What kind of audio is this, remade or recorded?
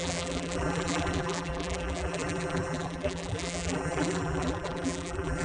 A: remade